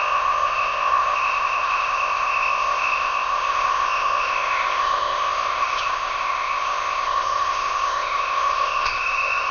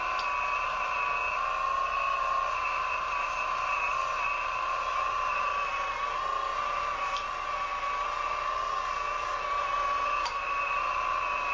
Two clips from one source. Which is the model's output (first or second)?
first